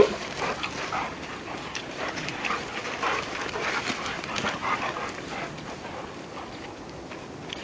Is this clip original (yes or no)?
yes